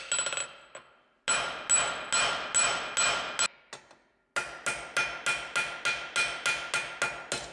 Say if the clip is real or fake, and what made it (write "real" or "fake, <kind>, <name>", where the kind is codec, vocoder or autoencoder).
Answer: real